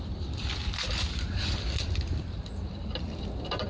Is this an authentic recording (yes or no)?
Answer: no